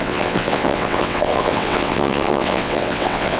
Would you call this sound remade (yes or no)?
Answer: yes